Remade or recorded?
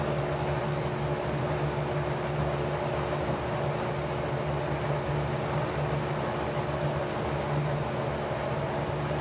recorded